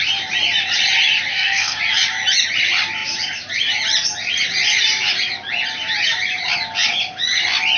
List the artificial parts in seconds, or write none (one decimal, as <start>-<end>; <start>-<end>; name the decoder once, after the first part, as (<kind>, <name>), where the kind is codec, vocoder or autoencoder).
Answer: 1.3-1.8 (codec, SNAC)